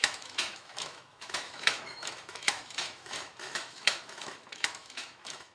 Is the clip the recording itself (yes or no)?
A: no